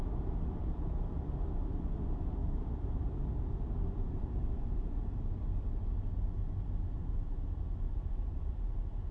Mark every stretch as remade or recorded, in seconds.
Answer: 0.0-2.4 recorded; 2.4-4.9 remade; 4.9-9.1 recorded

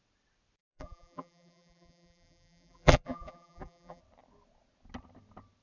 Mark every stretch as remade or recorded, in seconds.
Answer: 0.0-0.6 recorded; 0.6-4.0 remade; 4.0-5.6 recorded

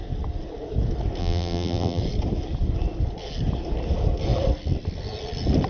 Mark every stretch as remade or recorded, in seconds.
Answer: 0.0-1.2 recorded; 1.2-2.0 remade; 2.0-5.7 recorded